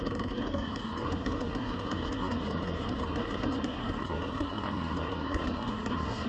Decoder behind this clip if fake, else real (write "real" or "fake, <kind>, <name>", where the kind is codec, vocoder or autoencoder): fake, codec, SNAC